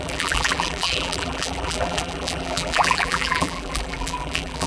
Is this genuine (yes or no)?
no